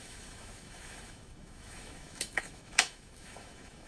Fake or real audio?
fake